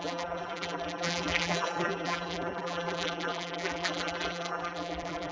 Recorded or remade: remade